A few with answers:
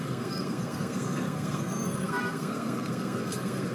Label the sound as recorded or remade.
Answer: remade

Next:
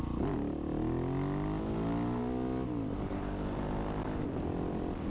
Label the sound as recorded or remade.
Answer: recorded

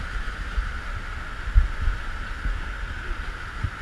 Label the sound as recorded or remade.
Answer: recorded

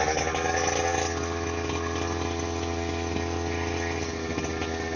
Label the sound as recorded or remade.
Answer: recorded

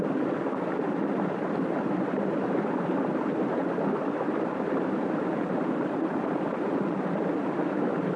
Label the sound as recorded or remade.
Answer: recorded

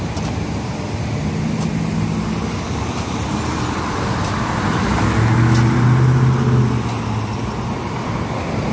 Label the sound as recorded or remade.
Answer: recorded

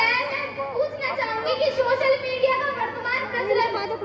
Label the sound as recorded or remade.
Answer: recorded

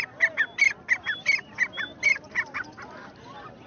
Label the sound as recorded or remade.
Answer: recorded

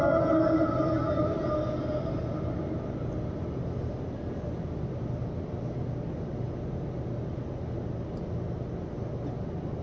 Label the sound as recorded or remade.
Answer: recorded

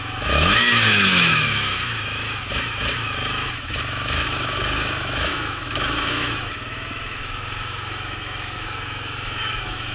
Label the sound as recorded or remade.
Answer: remade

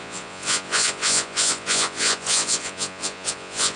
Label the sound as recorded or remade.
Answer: remade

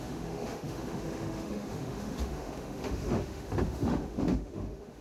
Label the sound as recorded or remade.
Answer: remade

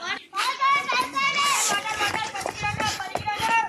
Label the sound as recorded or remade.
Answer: recorded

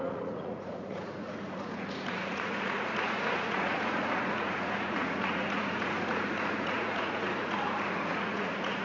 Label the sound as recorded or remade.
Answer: remade